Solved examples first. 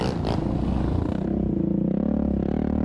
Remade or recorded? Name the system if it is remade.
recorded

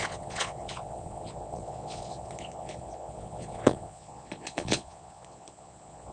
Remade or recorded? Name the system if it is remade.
remade, vocoder, Vocos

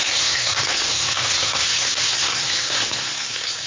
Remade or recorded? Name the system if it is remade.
remade, codec, SNAC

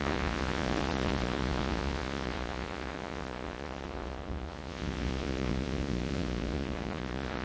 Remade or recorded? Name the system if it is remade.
remade, vocoder, Vocos